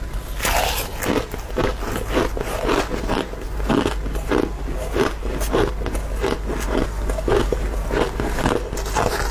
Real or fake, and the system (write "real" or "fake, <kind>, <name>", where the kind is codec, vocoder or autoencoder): real